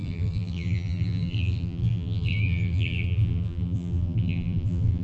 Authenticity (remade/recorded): remade